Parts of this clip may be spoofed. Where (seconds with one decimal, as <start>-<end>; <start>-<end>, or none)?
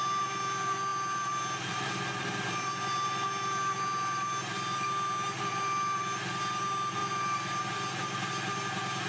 none